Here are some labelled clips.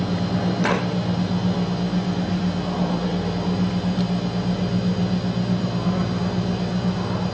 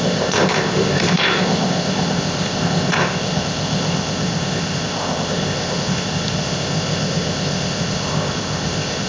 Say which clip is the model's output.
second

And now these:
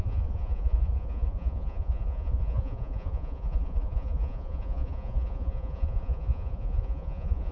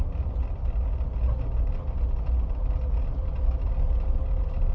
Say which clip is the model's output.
first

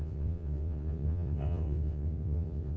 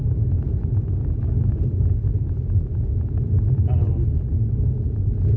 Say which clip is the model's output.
first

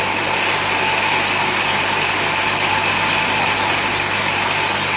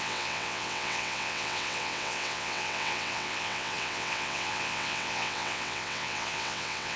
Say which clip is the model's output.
second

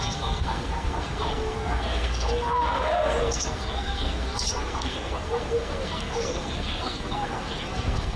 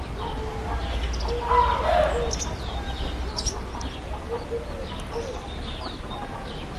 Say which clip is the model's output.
first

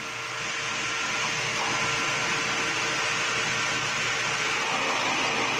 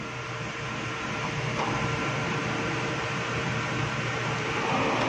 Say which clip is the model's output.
second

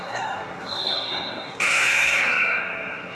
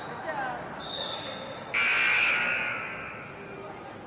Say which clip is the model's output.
first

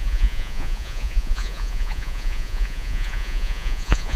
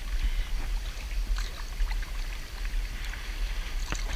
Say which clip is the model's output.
first